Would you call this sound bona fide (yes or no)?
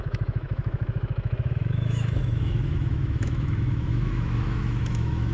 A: no